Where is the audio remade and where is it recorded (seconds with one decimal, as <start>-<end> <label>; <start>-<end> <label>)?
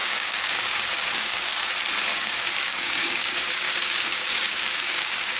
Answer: 0.0-1.5 remade; 1.5-2.1 recorded; 2.1-5.4 remade